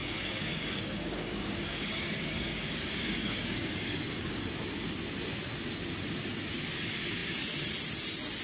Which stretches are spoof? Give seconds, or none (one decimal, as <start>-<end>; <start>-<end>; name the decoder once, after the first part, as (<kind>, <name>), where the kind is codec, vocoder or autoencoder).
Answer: 0.0-4.5 (codec, DAC)